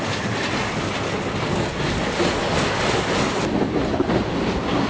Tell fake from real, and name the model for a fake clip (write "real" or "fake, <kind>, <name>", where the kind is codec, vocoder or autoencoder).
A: real